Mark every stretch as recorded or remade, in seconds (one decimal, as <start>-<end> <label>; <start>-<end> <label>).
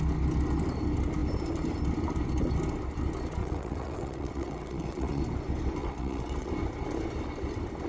0.0-3.4 recorded; 3.4-5.2 remade; 5.2-5.8 recorded; 5.8-6.5 remade; 6.5-7.9 recorded